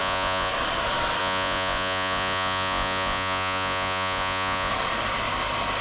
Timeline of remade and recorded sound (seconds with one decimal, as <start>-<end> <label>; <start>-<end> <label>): 0.0-0.5 remade; 0.5-1.2 recorded; 1.2-4.7 remade; 4.7-5.8 recorded